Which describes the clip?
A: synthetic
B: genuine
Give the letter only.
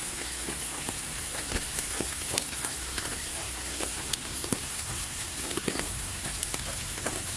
A